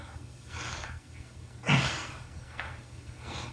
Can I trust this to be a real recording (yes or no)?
no